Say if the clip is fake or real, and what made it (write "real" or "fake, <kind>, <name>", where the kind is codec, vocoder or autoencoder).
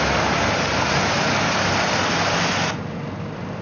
real